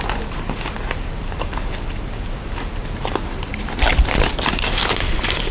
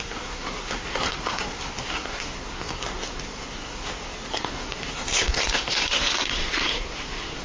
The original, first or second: first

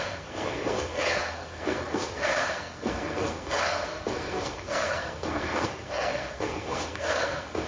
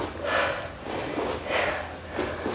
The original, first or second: second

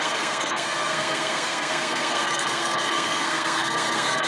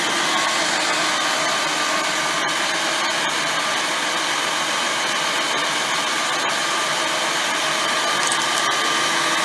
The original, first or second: second